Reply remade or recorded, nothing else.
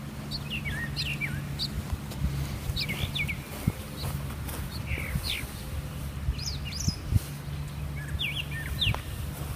recorded